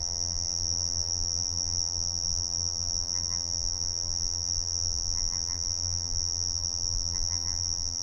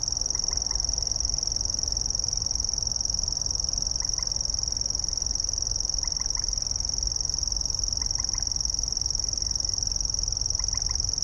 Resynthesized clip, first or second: first